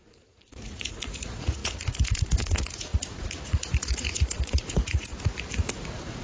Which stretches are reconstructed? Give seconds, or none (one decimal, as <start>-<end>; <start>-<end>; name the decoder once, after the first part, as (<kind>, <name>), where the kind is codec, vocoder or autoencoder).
0.0-5.1 (vocoder, Vocos); 5.8-6.2